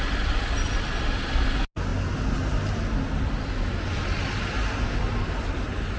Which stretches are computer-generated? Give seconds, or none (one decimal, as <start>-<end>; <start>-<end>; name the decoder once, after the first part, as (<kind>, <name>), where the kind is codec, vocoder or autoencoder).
none